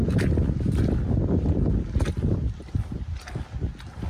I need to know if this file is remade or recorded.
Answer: recorded